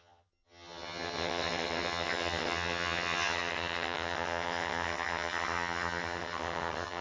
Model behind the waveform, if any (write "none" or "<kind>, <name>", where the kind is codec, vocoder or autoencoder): vocoder, HiFi-GAN